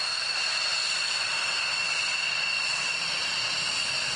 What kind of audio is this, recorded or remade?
recorded